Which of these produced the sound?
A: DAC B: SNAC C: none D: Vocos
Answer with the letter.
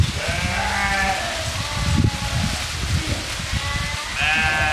C